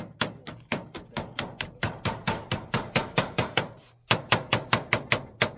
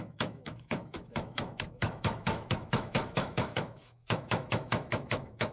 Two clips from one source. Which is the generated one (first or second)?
second